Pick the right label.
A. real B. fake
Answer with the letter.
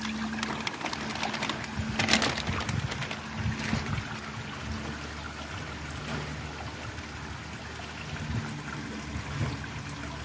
A